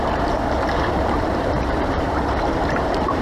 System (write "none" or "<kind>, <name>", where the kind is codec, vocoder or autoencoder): vocoder, BigVGAN v2